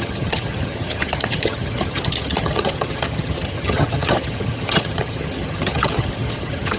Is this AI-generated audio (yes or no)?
yes